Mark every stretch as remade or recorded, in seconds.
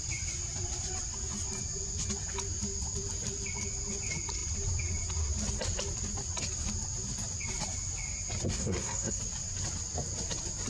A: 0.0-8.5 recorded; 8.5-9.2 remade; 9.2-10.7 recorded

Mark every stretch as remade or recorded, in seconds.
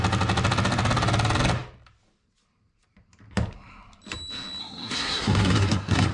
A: 0.0-4.6 recorded; 4.6-6.1 remade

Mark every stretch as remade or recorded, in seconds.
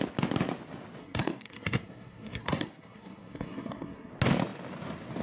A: 0.0-1.0 recorded; 1.0-4.1 remade; 4.1-5.2 recorded